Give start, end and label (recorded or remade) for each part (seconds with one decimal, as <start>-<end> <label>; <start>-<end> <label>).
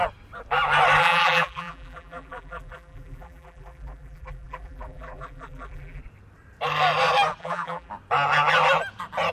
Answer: 0.0-1.0 recorded; 1.0-6.0 remade; 6.0-7.4 recorded; 7.4-7.9 remade; 7.9-9.3 recorded